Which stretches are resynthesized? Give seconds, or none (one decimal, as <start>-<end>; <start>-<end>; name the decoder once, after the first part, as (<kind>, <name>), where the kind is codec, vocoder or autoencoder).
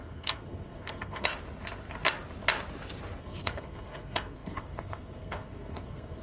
0.0-1.3 (codec, SNAC); 3.2-6.2